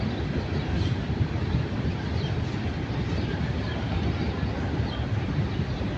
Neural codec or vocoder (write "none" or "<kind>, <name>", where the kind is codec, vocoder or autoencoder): none